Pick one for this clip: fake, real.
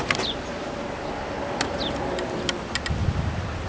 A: real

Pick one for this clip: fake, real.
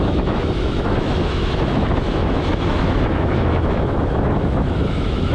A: fake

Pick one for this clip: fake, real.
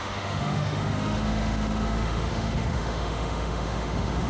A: fake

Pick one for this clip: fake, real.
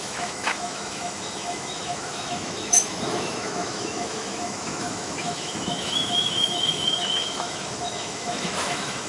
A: fake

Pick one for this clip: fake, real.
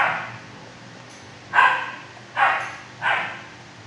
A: real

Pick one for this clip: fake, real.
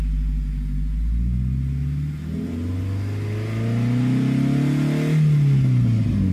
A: real